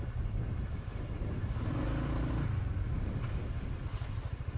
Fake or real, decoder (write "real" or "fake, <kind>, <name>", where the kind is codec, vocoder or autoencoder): real